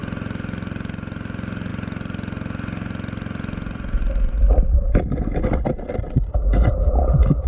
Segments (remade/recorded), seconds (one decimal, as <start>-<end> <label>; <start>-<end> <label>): 0.0-7.5 recorded